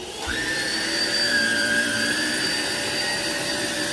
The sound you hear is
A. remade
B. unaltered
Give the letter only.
A